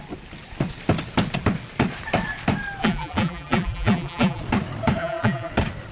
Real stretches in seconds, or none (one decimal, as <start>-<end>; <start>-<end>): 0.0-2.8; 4.4-5.0; 5.5-5.9